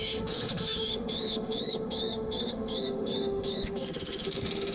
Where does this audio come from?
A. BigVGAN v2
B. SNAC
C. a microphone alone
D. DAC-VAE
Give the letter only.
D